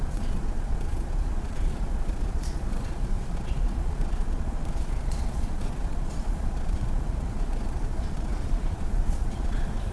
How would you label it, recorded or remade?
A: remade